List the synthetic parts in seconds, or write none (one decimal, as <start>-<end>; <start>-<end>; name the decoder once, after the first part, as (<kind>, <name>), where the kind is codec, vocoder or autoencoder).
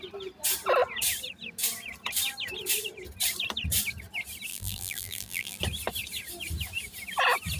4.5-5.6 (vocoder, BigVGAN v2)